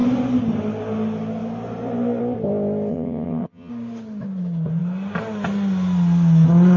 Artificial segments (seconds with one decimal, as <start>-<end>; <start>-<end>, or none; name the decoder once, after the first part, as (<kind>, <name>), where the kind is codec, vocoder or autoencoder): 2.9-3.7 (vocoder, HiFi-GAN)